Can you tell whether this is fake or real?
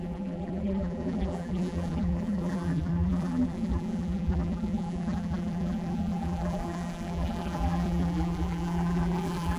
fake